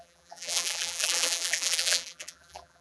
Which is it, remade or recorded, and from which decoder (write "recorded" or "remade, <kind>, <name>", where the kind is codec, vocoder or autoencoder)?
remade, vocoder, BigVGAN v2